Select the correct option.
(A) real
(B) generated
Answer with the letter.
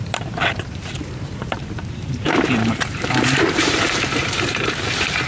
B